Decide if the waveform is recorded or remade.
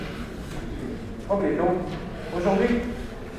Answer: recorded